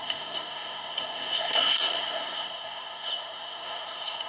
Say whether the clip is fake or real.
fake